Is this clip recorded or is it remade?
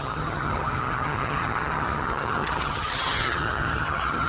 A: remade